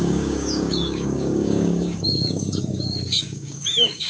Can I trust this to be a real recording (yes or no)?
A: no